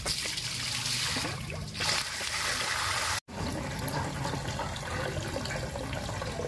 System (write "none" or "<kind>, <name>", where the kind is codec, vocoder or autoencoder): none